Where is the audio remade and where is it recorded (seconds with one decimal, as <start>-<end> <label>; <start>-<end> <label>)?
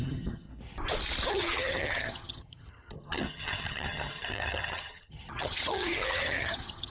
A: 0.0-0.5 remade; 0.5-1.3 recorded; 1.3-6.9 remade